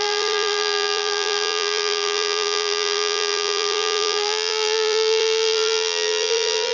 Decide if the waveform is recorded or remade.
remade